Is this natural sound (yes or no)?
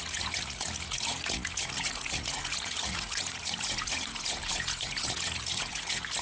no